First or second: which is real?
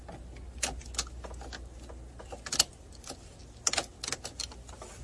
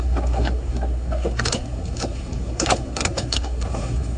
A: first